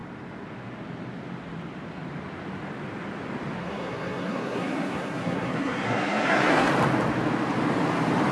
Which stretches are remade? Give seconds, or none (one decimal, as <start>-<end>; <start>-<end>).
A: 3.6-6.7